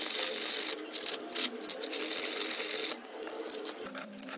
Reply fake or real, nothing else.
fake